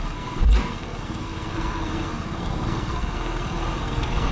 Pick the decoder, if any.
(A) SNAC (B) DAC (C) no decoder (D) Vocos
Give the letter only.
A